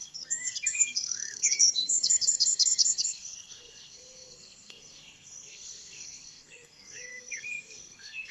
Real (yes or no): no